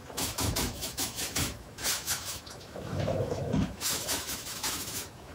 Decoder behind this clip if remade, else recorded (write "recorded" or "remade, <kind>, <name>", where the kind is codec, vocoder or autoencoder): remade, autoencoder, DAC-VAE